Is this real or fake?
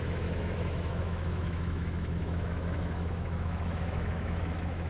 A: fake